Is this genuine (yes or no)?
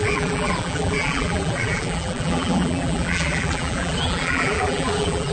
no